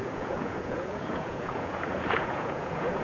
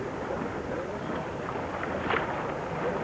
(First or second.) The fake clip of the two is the first